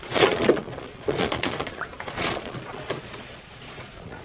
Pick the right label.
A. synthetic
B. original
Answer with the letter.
A